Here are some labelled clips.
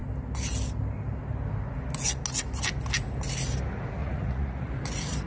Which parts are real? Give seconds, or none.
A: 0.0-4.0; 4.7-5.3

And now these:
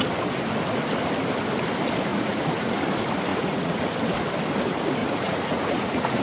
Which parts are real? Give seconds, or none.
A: 0.0-2.1; 2.8-3.3; 3.8-5.0

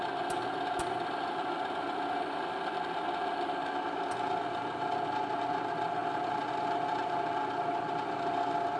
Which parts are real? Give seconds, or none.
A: 0.0-8.8

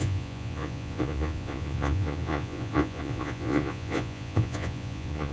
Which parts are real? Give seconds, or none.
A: none

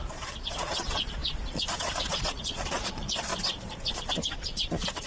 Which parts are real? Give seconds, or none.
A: 3.3-3.9

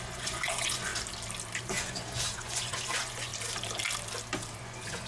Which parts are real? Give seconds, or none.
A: 0.9-1.6; 3.3-4.6

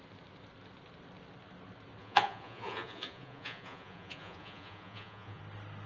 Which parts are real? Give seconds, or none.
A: 0.0-2.0; 5.4-5.9